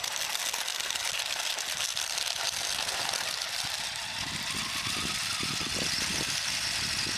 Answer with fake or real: real